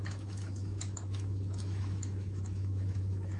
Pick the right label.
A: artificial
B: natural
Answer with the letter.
A